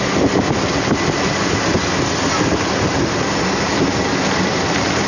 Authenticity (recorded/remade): recorded